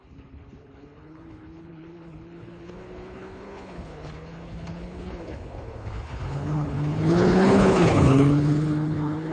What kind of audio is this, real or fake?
fake